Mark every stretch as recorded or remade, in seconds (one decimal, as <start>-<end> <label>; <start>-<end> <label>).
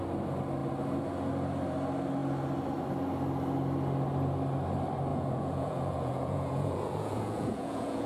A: 0.0-5.1 recorded; 5.1-8.1 remade